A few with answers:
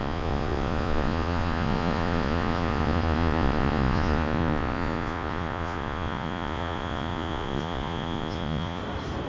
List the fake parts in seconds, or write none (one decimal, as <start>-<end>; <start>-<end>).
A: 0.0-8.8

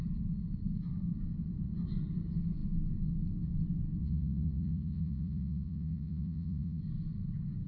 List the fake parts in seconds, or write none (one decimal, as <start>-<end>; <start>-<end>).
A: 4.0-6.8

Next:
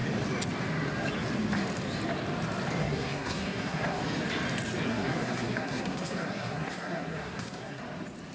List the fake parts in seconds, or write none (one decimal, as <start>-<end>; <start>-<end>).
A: 2.8-4.0; 4.9-7.8